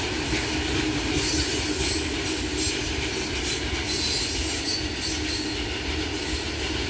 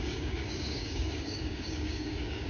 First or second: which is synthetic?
second